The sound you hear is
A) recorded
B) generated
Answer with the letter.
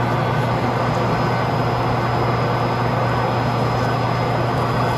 A